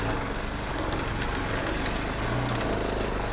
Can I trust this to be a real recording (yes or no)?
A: yes